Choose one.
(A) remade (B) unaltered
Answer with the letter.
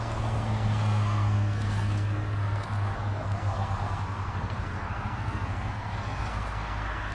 A